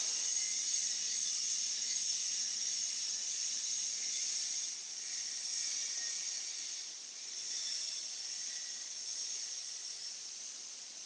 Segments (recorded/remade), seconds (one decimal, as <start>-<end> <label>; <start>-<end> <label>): 0.0-5.5 remade; 5.5-6.7 recorded; 6.7-11.1 remade